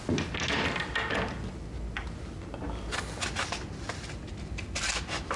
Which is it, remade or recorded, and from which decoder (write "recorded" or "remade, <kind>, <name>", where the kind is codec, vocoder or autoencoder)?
recorded